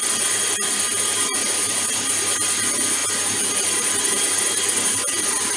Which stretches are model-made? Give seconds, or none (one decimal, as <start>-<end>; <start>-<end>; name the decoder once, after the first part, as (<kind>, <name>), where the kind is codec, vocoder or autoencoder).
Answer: none